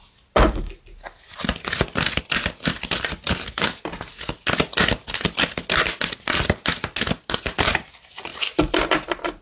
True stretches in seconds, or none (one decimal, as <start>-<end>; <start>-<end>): 0.0-9.4